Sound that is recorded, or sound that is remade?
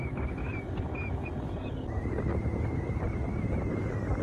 recorded